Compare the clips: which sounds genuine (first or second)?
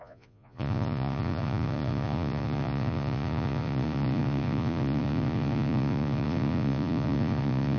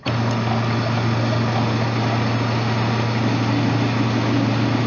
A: second